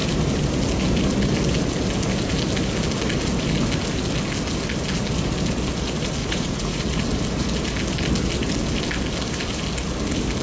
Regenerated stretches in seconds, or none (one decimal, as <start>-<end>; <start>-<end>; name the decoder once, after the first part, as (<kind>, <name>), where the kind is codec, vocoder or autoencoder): 6.2-6.8 (vocoder, Vocos)